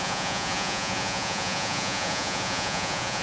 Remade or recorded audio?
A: remade